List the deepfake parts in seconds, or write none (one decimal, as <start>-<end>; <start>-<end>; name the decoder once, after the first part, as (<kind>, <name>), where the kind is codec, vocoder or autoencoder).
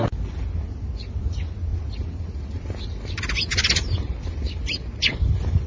none